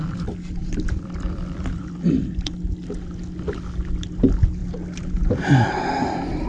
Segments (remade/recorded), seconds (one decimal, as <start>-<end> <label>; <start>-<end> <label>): 0.0-0.6 recorded; 0.6-2.5 remade; 2.5-4.6 recorded; 4.6-5.5 remade; 5.5-6.5 recorded